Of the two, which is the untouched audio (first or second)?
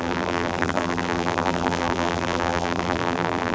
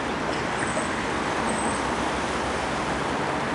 second